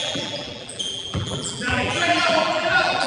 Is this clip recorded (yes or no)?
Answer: no